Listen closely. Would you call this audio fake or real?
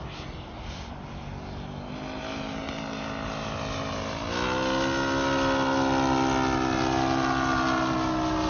real